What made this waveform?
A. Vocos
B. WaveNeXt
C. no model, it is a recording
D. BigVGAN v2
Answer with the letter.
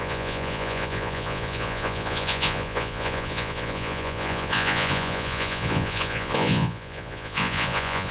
A